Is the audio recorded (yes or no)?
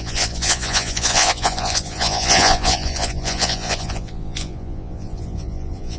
no